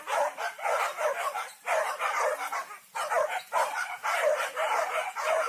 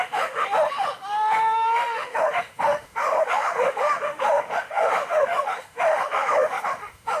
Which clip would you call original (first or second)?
first